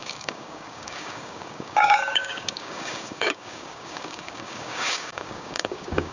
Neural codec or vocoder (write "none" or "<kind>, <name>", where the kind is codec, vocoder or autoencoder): codec, DAC